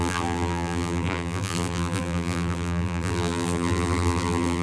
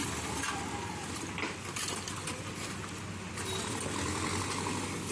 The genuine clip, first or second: second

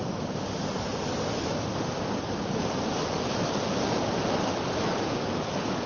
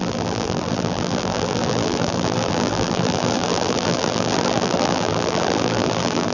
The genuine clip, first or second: first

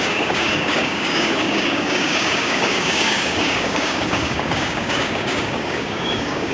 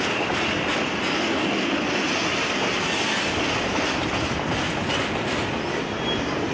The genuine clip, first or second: second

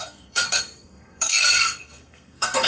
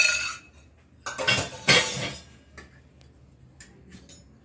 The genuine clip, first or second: second